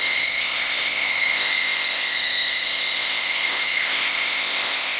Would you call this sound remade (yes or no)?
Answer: yes